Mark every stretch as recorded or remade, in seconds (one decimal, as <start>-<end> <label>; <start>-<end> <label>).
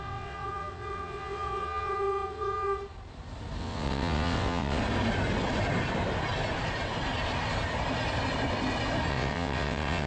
0.0-2.8 remade; 2.8-3.6 recorded; 3.6-4.8 remade; 4.8-9.1 recorded; 9.1-10.1 remade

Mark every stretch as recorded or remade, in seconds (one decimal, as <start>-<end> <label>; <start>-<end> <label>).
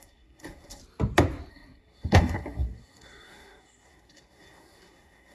0.0-0.8 remade; 0.8-1.5 recorded; 1.5-5.3 remade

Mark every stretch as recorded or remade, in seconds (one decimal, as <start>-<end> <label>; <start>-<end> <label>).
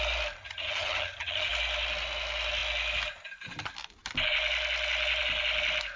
0.0-0.4 recorded; 0.4-1.5 remade; 1.5-6.0 recorded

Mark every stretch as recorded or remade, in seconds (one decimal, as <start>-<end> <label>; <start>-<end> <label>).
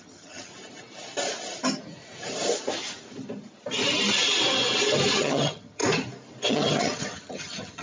0.0-0.5 remade; 0.5-5.1 recorded; 5.1-5.8 remade; 5.8-6.5 recorded; 6.5-7.8 remade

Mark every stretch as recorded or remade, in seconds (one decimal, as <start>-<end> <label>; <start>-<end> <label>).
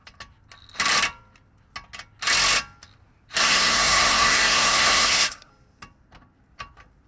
0.0-3.4 recorded; 3.4-5.5 remade; 5.5-7.1 recorded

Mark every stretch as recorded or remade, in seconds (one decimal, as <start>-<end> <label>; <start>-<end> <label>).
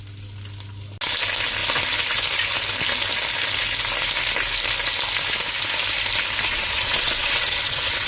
0.0-6.5 recorded; 6.5-8.1 remade